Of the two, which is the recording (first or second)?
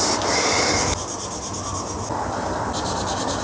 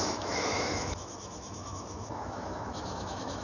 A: first